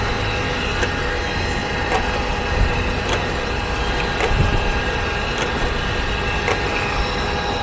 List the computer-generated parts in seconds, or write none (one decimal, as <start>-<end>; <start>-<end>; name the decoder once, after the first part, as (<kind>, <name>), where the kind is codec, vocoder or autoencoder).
none